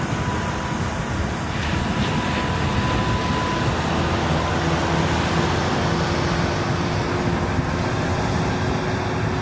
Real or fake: real